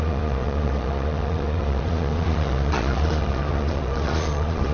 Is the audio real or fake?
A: fake